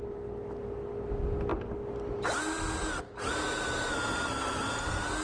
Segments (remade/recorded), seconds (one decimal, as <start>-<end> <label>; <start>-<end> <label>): 0.0-5.2 recorded